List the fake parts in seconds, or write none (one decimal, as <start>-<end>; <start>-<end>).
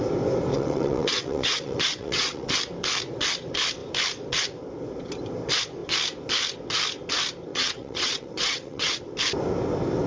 0.5-2.6; 7.5-9.0